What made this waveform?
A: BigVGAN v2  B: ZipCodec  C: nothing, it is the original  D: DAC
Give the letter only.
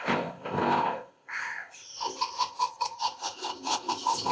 B